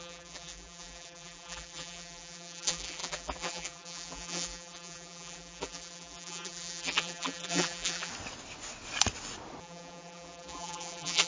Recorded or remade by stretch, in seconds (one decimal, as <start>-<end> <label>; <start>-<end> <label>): 0.0-8.1 remade; 8.1-9.6 recorded; 9.6-11.3 remade